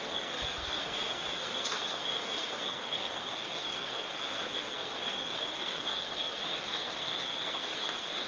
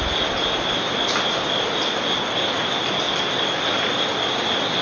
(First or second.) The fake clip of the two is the first